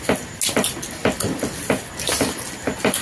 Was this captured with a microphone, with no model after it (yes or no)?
yes